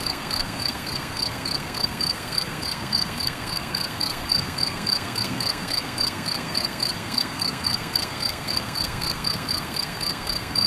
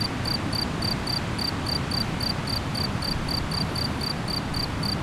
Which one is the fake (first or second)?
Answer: first